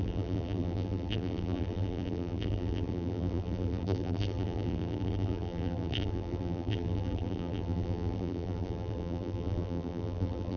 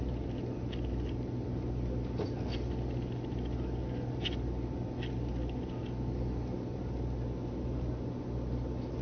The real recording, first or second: second